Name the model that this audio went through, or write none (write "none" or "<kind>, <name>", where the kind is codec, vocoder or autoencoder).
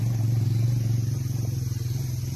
none